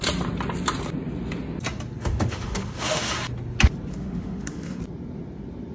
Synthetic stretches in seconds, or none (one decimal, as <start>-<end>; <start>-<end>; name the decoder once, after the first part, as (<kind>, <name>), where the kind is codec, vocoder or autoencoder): 2.0-3.1 (autoencoder, DAC-VAE); 3.9-4.8

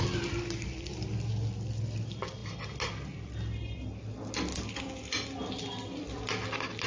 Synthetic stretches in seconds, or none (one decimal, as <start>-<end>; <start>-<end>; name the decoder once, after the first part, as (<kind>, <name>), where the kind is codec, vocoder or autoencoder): none

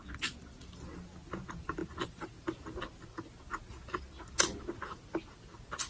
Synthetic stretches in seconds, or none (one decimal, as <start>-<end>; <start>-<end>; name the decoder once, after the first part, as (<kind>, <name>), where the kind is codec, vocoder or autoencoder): none

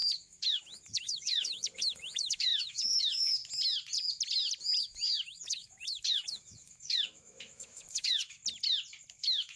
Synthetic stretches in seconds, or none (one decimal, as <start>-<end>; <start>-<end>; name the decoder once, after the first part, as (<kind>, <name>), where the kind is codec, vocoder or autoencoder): 0.0-3.4 (autoencoder, DAC-VAE); 4.8-8.4; 9.1-9.6

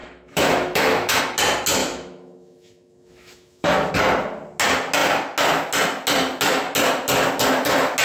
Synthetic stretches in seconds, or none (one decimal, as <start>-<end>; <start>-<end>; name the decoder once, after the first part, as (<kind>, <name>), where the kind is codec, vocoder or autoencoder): 0.0-1.2 (autoencoder, DAC-VAE); 1.8-3.9

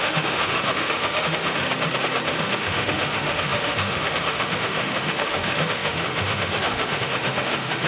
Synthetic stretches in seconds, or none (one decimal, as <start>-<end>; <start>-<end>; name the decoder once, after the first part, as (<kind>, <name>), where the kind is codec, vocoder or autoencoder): 0.0-1.6 (autoencoder, DAC-VAE); 2.4-7.9

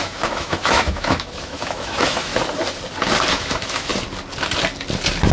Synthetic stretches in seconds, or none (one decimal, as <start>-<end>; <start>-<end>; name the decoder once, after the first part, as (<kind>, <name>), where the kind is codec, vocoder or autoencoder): 0.0-2.3 (autoencoder, DAC-VAE); 3.3-3.9